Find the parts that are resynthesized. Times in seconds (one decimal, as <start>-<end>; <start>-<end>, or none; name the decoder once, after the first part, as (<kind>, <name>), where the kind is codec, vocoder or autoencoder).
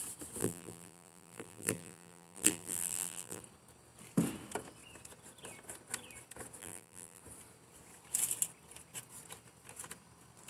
0.4-3.4 (vocoder, BigVGAN v2); 6.6-7.2